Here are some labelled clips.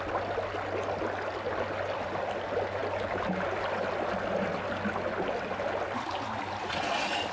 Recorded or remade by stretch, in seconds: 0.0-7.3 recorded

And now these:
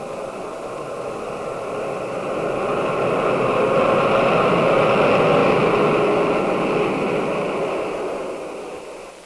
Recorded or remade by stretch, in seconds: 0.0-9.3 recorded

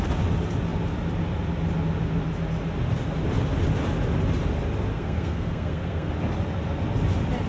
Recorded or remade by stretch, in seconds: 0.0-4.9 recorded; 4.9-6.1 remade; 6.1-7.5 recorded

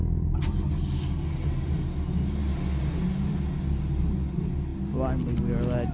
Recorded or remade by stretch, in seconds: 0.0-5.9 recorded